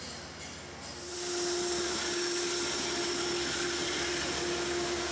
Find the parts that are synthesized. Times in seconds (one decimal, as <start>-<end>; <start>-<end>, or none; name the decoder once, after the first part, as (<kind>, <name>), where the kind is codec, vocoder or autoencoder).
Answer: none

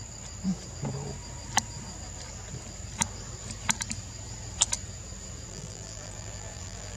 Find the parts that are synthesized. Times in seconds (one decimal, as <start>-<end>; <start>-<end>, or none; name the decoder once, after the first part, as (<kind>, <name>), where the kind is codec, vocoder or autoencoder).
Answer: 5.5-7.0 (vocoder, BigVGAN v2)

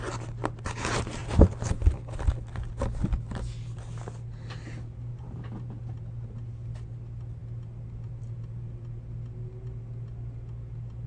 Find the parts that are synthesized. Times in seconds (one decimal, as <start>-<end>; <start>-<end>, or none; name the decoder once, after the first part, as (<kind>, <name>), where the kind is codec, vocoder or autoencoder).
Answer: 5.1-5.7 (vocoder, BigVGAN v2)

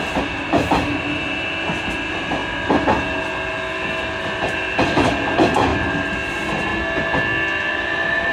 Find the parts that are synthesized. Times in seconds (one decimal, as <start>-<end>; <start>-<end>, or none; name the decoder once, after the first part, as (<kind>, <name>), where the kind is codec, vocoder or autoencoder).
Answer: 0.0-2.4 (vocoder, BigVGAN v2); 5.3-5.7; 6.3-6.7; 7.7-8.3

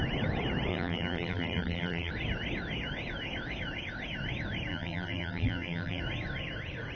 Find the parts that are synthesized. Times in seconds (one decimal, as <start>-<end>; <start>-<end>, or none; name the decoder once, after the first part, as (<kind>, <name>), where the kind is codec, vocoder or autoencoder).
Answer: 0.7-2.1 (vocoder, BigVGAN v2); 4.7-6.0

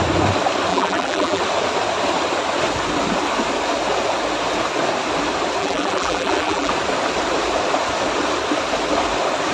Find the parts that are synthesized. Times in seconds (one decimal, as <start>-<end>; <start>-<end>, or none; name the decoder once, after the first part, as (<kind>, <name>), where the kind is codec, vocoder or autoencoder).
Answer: 0.7-1.4 (vocoder, BigVGAN v2); 5.6-6.7

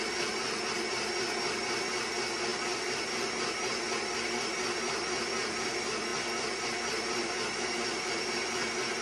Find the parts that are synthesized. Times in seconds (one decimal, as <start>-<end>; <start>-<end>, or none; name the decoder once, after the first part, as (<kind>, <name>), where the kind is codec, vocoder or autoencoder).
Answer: none